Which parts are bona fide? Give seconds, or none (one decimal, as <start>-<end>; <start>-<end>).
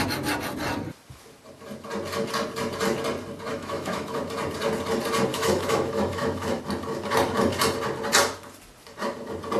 0.0-3.5; 4.2-5.3; 6.6-9.6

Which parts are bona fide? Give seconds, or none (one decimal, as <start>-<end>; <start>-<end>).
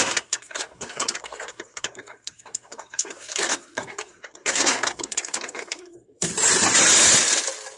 6.3-7.8